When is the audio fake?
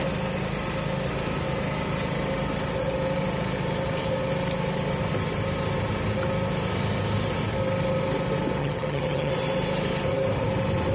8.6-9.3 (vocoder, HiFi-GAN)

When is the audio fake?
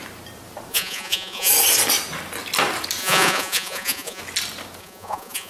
0.7-1.5 (vocoder, Vocos); 3.0-4.2; 4.8-5.5